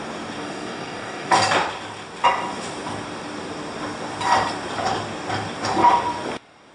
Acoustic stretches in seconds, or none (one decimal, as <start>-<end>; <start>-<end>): 0.0-0.4; 1.3-6.7